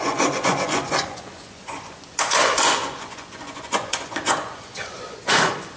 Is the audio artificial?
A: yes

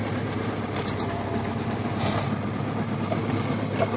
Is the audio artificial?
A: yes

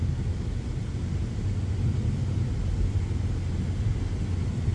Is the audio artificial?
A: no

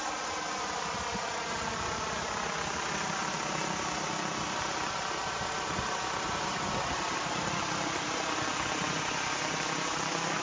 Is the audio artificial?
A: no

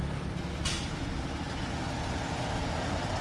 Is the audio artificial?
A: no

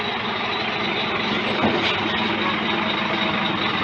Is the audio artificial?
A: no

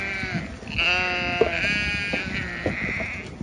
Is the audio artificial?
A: no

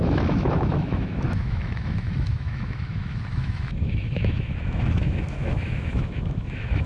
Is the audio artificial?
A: yes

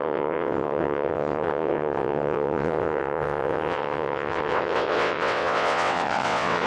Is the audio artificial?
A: yes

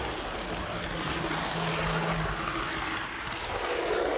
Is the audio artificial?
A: no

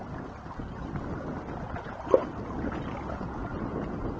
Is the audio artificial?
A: no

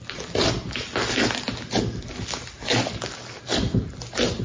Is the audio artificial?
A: no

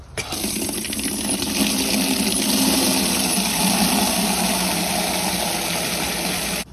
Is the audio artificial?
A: no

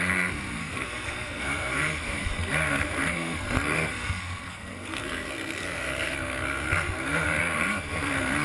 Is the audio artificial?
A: yes